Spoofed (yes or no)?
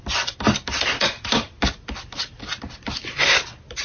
no